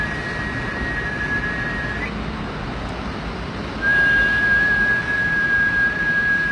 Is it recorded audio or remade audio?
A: recorded